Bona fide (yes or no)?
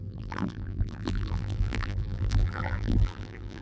no